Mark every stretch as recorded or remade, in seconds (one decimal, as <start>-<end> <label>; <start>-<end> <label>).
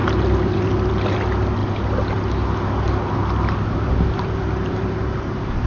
0.0-5.7 recorded